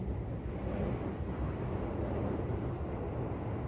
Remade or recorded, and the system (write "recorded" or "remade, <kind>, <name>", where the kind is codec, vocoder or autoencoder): recorded